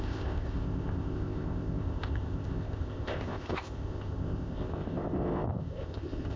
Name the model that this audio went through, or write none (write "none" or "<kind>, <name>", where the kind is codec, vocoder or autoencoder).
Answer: codec, ZipCodec